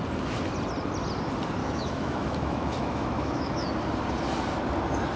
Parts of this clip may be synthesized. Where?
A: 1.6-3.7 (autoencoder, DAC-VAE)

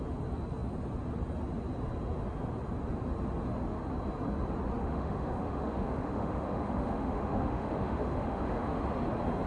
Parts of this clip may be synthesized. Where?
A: 4.8-8.8 (autoencoder, DAC-VAE)

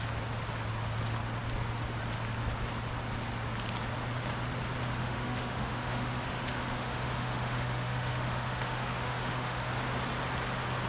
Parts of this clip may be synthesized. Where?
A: 5.0-9.7 (autoencoder, DAC-VAE)

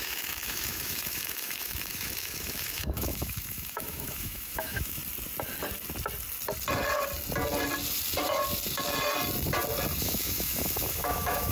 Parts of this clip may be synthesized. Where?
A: 0.0-5.0 (autoencoder, DAC-VAE); 10.0-11.5

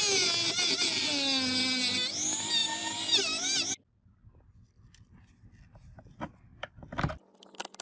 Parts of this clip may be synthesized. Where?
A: none

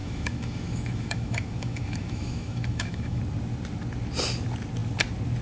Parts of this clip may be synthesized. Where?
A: 0.0-3.2 (autoencoder, DAC-VAE)